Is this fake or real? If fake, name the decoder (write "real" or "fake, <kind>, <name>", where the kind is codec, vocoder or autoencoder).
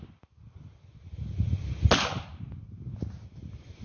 real